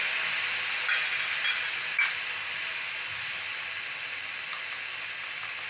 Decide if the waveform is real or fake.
real